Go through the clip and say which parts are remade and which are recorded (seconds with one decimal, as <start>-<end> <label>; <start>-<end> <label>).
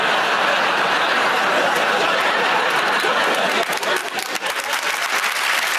0.0-5.8 recorded